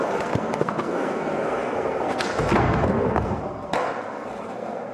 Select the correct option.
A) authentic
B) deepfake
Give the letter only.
B